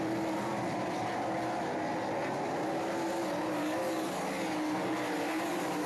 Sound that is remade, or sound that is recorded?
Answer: recorded